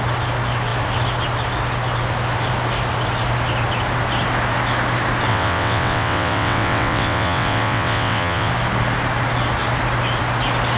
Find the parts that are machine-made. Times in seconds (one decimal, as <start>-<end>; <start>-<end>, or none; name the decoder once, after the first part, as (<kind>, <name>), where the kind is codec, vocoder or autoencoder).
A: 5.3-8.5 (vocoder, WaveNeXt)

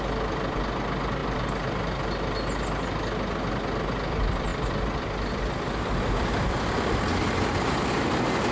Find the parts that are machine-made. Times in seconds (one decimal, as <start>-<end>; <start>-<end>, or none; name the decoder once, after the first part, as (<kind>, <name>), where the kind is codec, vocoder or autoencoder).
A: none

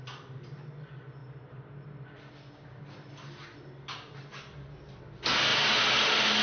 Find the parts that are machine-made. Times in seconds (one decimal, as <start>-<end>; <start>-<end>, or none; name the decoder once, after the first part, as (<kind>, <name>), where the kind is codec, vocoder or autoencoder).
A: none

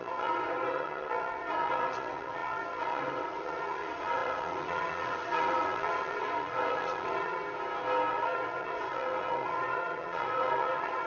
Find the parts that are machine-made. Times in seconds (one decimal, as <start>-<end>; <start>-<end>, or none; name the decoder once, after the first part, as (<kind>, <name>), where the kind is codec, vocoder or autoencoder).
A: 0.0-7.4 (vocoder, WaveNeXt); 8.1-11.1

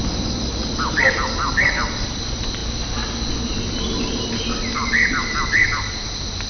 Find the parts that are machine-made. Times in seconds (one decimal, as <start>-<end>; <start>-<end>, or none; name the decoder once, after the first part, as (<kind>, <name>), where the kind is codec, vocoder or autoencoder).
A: none

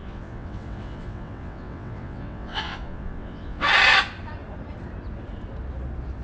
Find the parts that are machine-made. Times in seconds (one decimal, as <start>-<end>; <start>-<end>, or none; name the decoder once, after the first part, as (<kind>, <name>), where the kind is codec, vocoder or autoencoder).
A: 0.0-3.7 (vocoder, WaveNeXt)